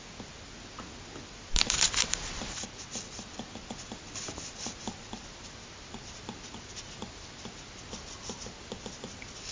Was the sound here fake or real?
real